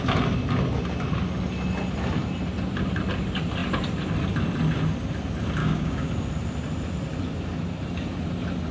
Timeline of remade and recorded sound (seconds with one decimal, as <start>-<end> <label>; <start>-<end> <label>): 0.0-5.6 recorded; 5.6-6.1 remade; 6.1-8.7 recorded